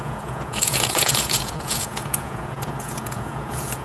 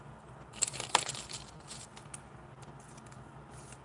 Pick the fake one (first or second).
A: first